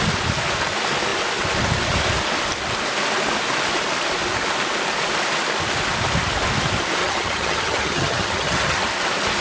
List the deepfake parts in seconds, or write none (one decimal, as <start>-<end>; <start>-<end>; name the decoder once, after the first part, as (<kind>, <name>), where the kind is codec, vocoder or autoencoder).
7.0-8.8 (vocoder, HiFi-GAN)